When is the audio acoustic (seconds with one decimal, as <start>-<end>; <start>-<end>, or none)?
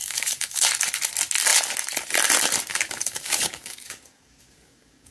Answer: 0.6-2.7